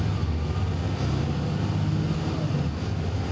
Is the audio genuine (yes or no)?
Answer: yes